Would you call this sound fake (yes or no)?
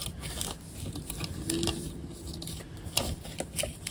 no